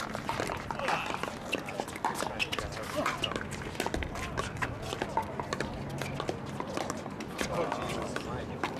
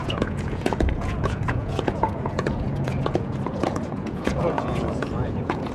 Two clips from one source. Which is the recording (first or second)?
first